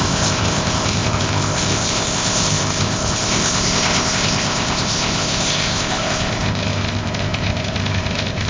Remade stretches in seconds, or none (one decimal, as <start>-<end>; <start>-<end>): 0.0-8.5